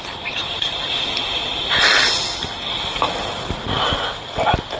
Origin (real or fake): real